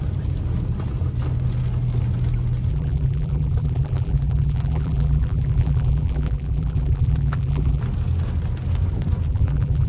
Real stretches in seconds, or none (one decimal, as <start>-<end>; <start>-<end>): 0.0-2.7; 7.8-9.3